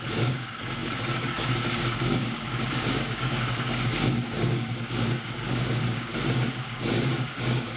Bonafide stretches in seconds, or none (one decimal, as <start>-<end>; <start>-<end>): 6.1-6.6